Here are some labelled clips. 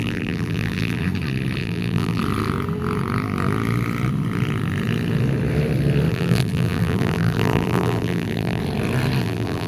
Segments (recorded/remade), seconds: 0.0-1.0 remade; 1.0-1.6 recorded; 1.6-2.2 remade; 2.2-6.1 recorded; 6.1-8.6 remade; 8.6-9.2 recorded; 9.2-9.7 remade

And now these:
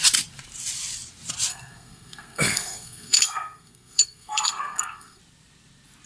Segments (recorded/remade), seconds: 0.0-1.5 recorded; 1.5-5.2 remade; 5.2-6.1 recorded

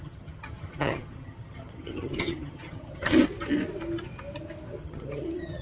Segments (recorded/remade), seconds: 0.0-3.2 remade; 3.2-4.8 recorded; 4.8-5.6 remade